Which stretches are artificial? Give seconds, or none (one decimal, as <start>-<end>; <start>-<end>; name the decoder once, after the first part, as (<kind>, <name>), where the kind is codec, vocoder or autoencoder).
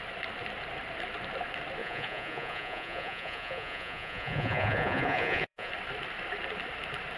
1.8-5.7 (vocoder, Vocos)